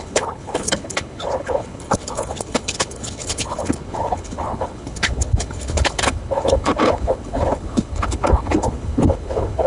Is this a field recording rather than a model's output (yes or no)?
no